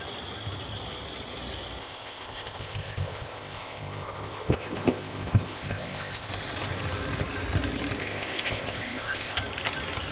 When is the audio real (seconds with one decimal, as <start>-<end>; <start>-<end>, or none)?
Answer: 0.0-1.8; 6.3-8.0; 9.4-10.1